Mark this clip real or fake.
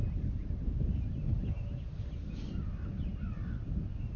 real